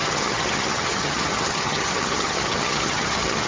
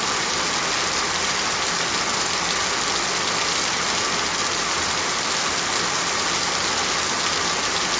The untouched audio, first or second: second